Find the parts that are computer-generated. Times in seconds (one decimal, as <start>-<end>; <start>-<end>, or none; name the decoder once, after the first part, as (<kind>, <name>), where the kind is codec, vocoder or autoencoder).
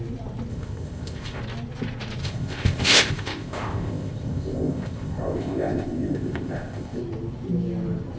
0.5-1.4 (codec, ZipCodec); 2.2-7.0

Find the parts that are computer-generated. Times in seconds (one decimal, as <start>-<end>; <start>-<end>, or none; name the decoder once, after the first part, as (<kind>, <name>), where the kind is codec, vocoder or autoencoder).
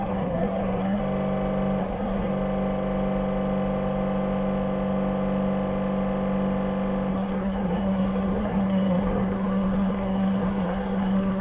0.0-1.0 (codec, SNAC); 1.8-2.3; 7.1-11.4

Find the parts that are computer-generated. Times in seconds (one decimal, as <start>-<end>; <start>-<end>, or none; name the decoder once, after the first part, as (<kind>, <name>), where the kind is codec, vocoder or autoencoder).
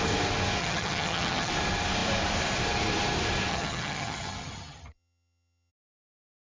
0.6-1.5 (vocoder, HiFi-GAN); 3.5-5.7